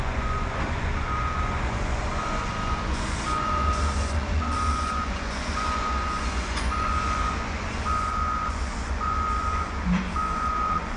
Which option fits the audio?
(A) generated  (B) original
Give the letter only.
A